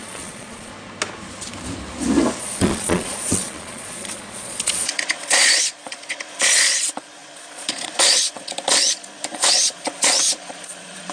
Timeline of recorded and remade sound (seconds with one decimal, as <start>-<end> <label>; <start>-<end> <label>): 0.0-0.7 remade; 0.7-2.4 recorded; 2.4-11.1 remade